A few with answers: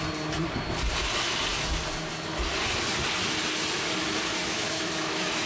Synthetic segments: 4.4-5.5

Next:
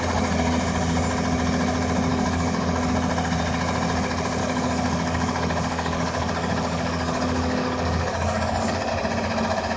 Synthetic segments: 2.1-2.9; 4.4-8.9